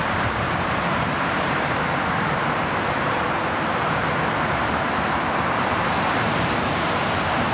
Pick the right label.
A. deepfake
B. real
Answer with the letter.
A